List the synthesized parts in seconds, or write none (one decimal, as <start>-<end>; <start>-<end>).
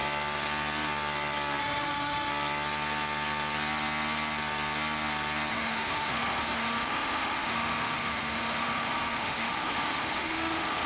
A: 1.6-2.3; 5.5-10.9